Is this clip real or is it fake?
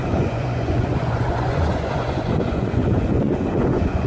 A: fake